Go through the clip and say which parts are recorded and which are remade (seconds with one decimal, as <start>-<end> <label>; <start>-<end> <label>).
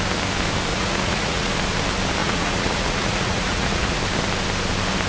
0.0-0.7 recorded; 0.7-1.5 remade; 1.5-2.2 recorded; 2.2-4.0 remade; 4.0-5.1 recorded